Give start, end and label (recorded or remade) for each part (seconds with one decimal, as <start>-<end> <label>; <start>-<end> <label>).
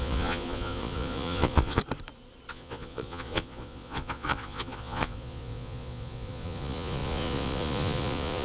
0.0-1.8 remade; 1.8-2.5 recorded; 2.5-8.4 remade